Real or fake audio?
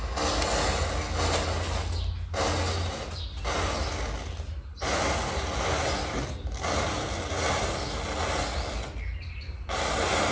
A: real